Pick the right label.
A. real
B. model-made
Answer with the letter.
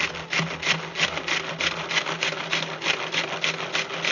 A